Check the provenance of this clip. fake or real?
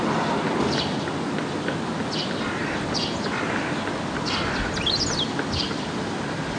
real